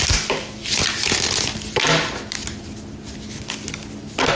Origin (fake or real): real